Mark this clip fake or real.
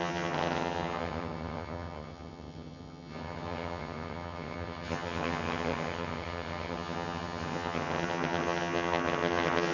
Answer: fake